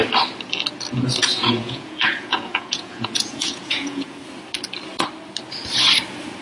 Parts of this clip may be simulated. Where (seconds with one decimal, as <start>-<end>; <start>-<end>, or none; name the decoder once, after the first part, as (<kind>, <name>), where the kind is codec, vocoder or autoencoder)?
1.2-4.2 (vocoder, Vocos)